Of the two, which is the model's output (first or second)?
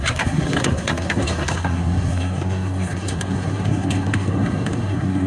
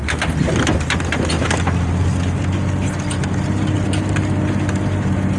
first